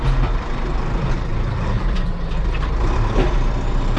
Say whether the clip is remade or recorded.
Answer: remade